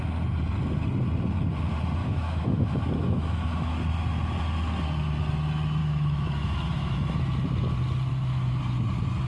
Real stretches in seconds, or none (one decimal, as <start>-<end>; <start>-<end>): 0.0-2.0; 3.7-5.8; 7.2-8.1; 8.6-9.3